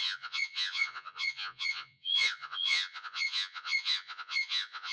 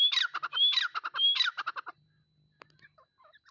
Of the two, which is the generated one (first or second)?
first